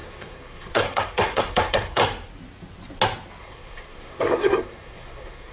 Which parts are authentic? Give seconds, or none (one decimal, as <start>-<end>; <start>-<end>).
2.0-3.4